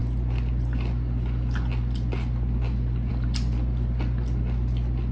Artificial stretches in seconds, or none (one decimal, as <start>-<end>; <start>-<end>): none